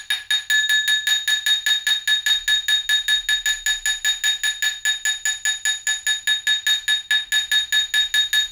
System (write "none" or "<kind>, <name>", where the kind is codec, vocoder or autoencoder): none